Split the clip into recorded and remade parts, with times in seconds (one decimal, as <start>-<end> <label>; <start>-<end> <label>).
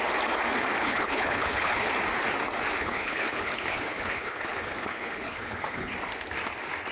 0.0-0.8 recorded; 0.8-1.9 remade; 1.9-2.8 recorded; 2.8-5.9 remade; 5.9-6.9 recorded